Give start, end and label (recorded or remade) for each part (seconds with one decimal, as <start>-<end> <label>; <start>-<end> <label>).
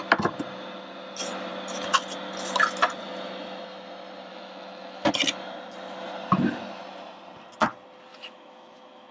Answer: 0.0-4.3 recorded; 4.3-5.1 remade; 5.1-8.1 recorded; 8.1-9.1 remade